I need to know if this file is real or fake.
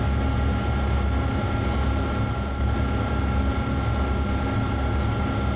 real